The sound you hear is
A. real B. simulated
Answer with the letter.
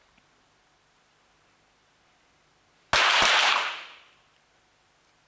A